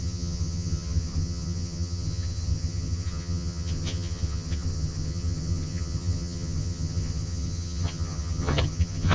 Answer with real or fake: fake